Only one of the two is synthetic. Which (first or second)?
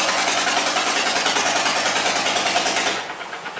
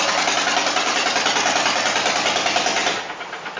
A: first